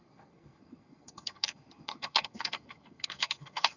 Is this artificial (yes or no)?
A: yes